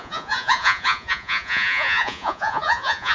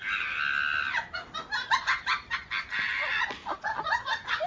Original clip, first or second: second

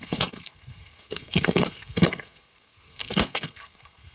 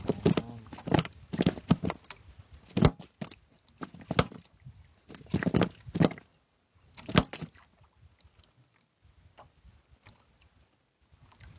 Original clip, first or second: second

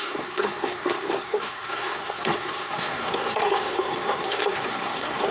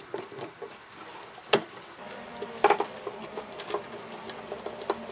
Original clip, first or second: second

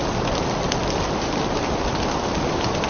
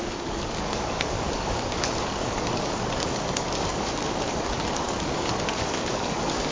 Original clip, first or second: first